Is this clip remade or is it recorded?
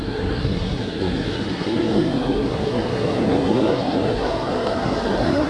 remade